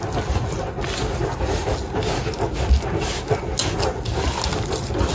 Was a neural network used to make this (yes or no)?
no